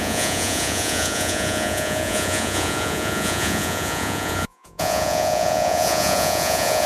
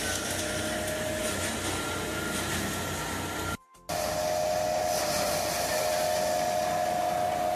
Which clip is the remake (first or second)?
first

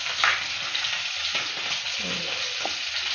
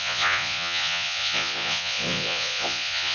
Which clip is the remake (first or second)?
second